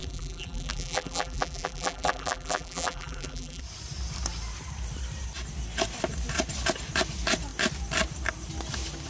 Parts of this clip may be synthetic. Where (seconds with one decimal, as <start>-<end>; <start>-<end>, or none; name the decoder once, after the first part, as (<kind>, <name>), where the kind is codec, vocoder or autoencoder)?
0.0-3.6 (vocoder, BigVGAN v2)